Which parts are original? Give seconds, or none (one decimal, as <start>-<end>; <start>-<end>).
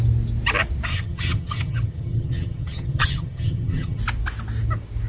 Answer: 0.0-0.9; 4.0-5.1